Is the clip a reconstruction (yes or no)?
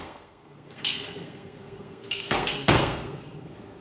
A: yes